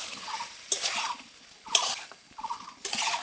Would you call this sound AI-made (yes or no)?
no